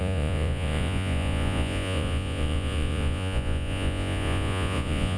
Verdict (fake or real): fake